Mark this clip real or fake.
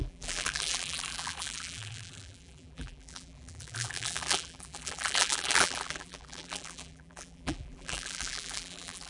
fake